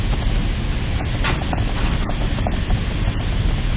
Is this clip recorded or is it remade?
recorded